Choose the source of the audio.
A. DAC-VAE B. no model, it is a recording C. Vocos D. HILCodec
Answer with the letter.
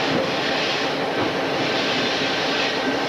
B